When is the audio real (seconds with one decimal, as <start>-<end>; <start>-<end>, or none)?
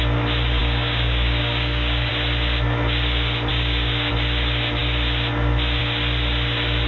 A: 0.0-0.6; 2.1-3.5; 4.1-6.9